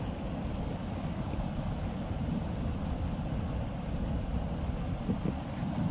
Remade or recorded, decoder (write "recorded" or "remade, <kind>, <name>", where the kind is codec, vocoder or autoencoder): recorded